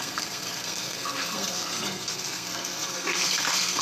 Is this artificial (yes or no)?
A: yes